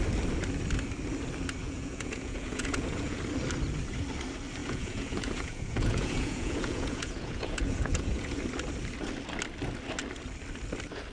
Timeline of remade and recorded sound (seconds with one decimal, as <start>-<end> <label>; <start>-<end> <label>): 0.0-1.6 recorded; 1.6-3.2 remade; 3.2-4.6 recorded; 4.6-8.4 remade; 8.4-11.1 recorded